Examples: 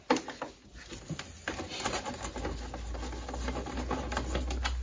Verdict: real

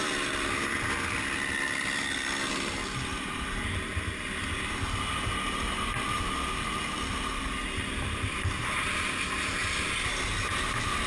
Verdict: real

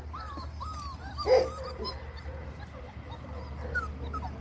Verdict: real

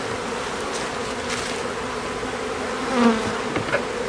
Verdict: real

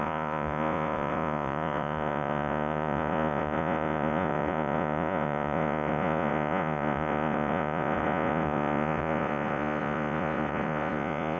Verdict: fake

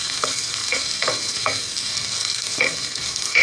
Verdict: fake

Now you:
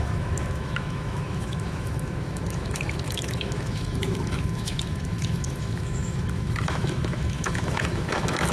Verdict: fake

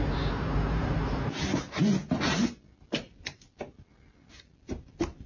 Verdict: real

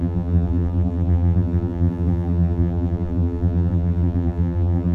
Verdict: fake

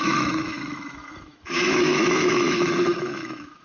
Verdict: fake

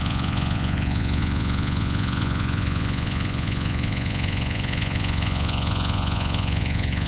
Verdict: fake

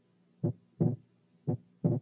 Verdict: real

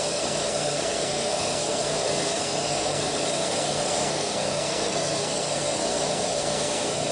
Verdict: fake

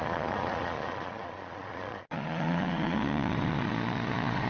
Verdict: fake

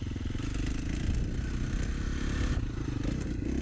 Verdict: real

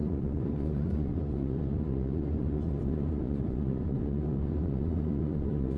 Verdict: fake